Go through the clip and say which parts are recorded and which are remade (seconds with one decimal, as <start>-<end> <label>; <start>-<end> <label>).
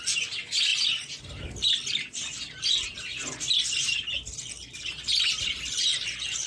0.0-6.5 recorded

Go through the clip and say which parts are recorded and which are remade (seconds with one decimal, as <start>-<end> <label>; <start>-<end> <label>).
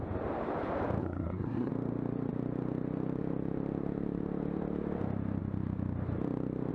0.0-1.0 recorded; 1.0-1.7 remade; 1.7-6.7 recorded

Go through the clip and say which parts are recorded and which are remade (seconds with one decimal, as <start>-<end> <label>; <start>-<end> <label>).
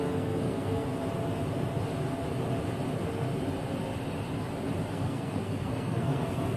0.0-0.9 remade; 0.9-4.9 recorded; 4.9-6.6 remade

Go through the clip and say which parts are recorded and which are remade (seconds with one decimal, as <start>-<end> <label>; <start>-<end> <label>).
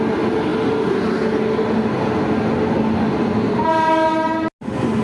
0.0-5.0 recorded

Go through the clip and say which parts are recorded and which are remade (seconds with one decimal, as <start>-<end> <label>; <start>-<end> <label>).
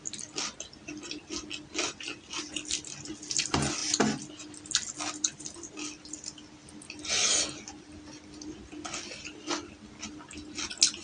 0.0-11.0 recorded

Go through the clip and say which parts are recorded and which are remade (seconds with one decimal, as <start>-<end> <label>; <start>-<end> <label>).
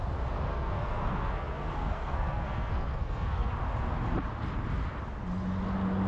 0.0-0.5 recorded; 0.5-3.5 remade; 3.5-6.1 recorded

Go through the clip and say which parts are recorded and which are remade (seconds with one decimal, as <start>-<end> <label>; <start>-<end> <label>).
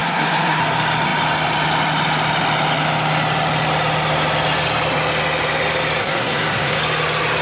0.0-0.6 remade; 0.6-6.0 recorded; 6.0-6.8 remade; 6.8-7.4 recorded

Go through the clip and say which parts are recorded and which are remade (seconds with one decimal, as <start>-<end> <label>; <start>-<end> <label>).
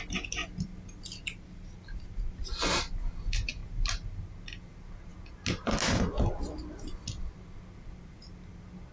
0.0-8.9 recorded